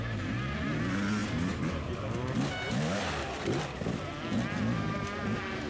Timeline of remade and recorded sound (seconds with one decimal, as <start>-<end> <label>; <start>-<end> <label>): 0.0-5.7 recorded